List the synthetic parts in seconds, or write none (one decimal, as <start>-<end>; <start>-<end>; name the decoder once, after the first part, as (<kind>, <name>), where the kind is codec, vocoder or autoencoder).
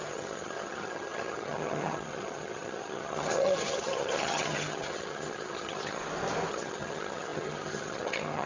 0.0-6.0 (vocoder, HiFi-GAN); 6.5-8.5